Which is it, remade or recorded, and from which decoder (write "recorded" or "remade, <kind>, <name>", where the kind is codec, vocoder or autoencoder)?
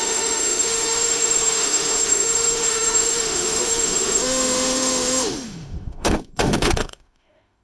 remade, autoencoder, DAC-VAE